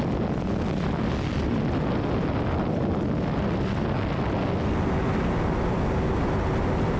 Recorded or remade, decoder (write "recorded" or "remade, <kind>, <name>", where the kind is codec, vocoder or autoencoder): recorded